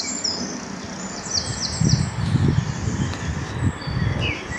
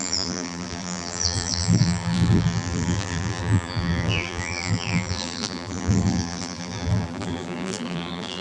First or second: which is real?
first